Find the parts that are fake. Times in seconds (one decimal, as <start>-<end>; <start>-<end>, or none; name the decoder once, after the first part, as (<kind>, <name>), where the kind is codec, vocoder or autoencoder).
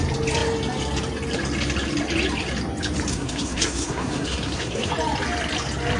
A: 3.1-4.9 (codec, SNAC)